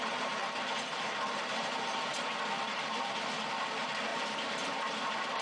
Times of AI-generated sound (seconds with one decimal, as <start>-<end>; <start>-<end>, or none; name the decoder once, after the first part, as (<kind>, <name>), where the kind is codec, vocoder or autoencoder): 0.4-3.6 (vocoder, BigVGAN v2); 4.1-5.4